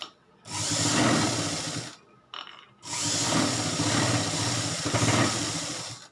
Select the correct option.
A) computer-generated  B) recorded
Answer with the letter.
B